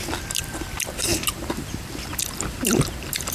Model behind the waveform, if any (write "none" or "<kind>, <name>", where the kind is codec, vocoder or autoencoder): vocoder, BigVGAN v2